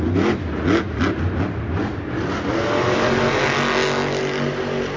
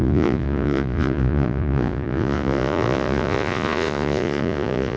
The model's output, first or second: second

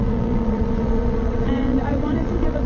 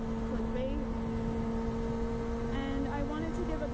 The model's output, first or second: first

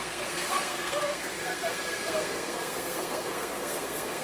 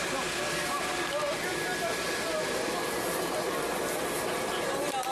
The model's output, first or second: first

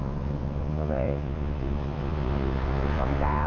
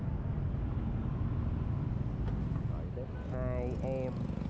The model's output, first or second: first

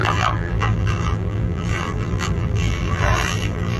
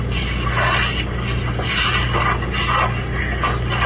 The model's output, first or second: first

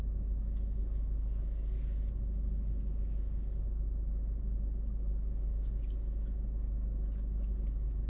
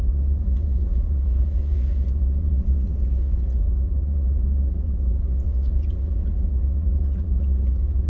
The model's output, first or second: second